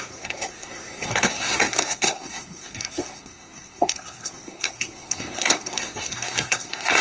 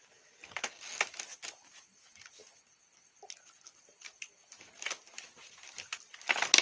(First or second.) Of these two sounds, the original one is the second